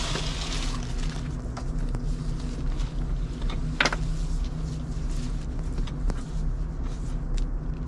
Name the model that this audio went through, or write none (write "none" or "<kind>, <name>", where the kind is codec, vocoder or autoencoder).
none